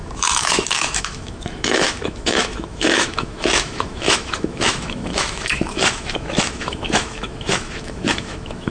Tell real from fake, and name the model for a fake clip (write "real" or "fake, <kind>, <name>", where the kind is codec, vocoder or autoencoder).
fake, autoencoder, DAC-VAE